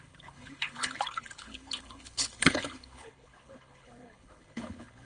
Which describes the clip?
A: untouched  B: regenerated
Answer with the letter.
B